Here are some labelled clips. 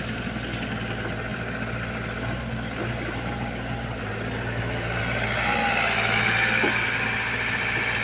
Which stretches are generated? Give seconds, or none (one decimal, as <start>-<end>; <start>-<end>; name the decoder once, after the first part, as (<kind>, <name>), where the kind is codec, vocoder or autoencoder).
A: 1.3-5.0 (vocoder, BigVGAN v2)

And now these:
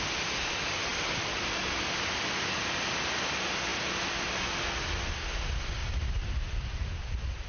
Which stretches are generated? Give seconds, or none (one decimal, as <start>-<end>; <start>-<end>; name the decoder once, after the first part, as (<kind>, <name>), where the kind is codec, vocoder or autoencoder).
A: 5.8-7.0 (vocoder, BigVGAN v2)

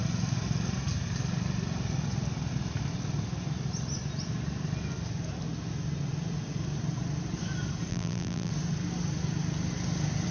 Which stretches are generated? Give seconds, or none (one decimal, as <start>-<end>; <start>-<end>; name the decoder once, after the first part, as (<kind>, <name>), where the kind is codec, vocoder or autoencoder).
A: 7.9-8.5 (vocoder, BigVGAN v2)

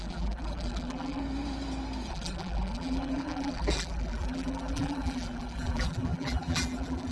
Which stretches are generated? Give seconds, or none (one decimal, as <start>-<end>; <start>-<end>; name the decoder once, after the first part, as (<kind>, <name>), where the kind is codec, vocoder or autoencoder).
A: 0.0-1.2 (vocoder, BigVGAN v2); 2.1-7.1